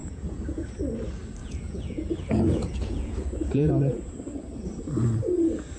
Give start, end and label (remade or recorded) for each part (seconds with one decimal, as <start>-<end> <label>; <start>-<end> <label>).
0.0-0.8 remade; 0.8-1.4 recorded; 1.4-3.7 remade; 3.7-5.8 recorded